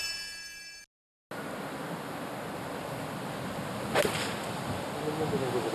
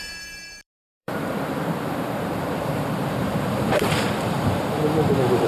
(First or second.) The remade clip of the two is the second